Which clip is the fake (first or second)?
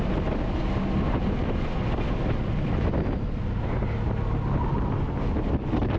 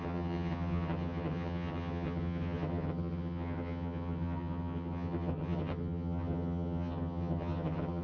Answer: second